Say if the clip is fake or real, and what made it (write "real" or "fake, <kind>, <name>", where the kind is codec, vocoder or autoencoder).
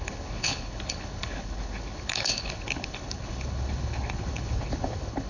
fake, codec, HILCodec